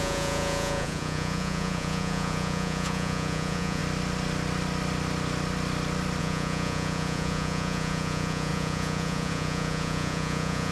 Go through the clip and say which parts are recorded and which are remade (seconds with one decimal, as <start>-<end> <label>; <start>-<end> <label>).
0.0-3.8 remade; 3.8-6.2 recorded; 6.2-10.7 remade